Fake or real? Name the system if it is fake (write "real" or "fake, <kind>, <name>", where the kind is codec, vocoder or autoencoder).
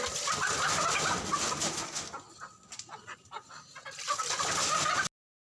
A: real